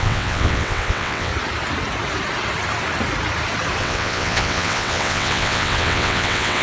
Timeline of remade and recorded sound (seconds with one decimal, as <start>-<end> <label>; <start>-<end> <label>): 0.0-1.3 remade; 1.3-3.8 recorded; 3.8-6.6 remade